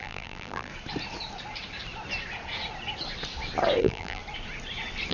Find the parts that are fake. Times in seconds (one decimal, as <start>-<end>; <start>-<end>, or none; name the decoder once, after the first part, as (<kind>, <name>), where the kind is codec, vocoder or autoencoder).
0.0-0.7 (vocoder, BigVGAN v2); 3.8-4.2